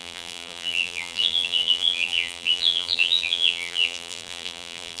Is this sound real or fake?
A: fake